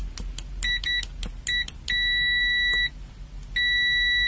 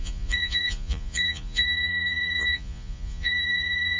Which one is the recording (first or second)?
first